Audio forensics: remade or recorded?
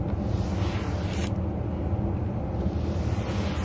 recorded